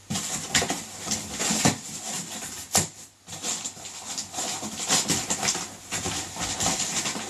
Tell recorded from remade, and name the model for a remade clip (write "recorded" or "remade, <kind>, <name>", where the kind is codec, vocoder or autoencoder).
recorded